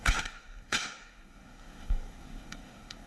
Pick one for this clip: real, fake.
fake